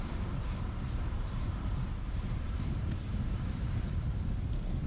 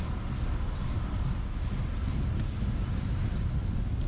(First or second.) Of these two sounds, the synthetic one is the first